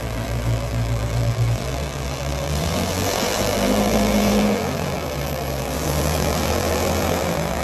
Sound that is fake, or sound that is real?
fake